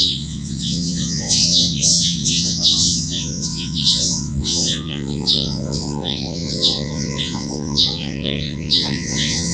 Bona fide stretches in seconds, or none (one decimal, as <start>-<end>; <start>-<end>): none